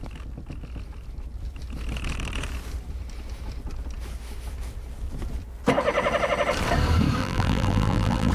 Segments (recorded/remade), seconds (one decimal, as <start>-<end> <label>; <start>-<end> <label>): 0.0-7.2 recorded; 7.2-8.3 remade